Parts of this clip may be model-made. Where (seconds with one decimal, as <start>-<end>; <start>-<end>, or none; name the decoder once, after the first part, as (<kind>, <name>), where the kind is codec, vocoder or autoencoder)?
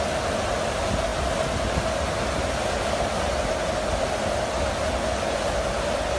none